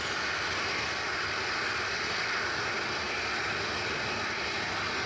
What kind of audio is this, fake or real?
real